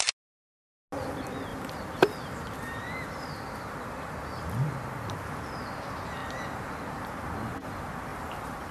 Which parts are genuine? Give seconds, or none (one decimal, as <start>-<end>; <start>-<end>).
0.0-1.5; 4.9-6.2; 7.1-8.7